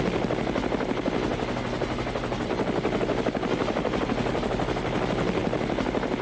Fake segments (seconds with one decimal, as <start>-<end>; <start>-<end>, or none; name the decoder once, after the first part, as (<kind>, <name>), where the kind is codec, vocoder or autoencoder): none

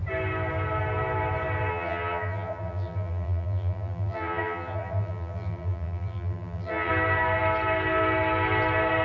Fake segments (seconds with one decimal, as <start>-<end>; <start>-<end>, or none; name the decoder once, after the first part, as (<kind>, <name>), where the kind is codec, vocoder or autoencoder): 1.7-6.9 (vocoder, BigVGAN v2)

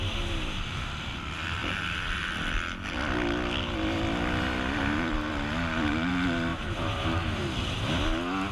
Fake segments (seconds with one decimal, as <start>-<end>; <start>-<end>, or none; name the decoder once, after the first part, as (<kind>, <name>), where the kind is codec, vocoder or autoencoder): 6.5-7.9 (vocoder, BigVGAN v2)

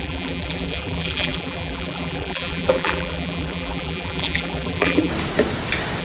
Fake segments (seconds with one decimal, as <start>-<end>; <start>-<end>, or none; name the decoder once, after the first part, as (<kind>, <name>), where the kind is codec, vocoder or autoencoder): 0.0-5.1 (vocoder, BigVGAN v2)

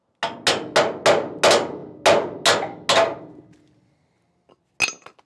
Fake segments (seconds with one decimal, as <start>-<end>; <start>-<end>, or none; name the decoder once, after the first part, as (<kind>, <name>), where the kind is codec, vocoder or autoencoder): none

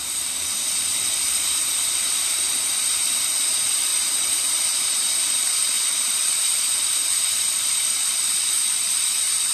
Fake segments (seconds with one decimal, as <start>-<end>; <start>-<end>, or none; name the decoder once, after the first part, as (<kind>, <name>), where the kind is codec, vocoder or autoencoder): 0.0-9.5 (vocoder, BigVGAN v2)

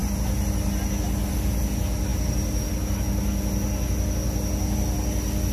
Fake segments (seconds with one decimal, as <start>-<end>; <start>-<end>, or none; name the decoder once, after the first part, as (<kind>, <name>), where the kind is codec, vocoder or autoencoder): none